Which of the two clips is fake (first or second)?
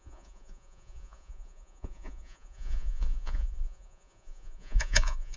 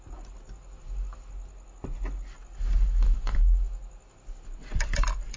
first